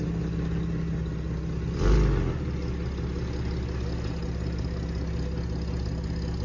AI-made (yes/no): no